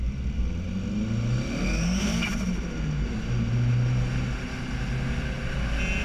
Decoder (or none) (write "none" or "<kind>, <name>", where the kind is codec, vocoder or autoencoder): none